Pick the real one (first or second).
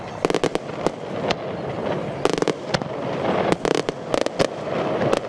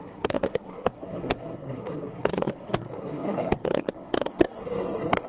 first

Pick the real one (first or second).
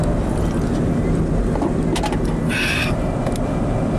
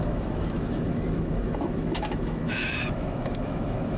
first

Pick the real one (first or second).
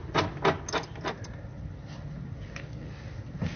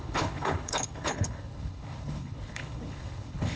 first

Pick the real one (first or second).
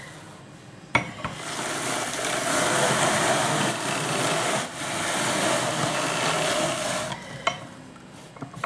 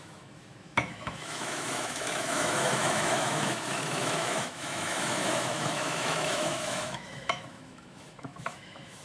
first